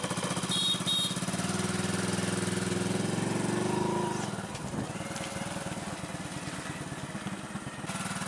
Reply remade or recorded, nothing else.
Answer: recorded